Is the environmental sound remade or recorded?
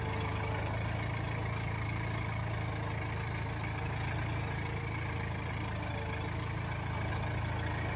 recorded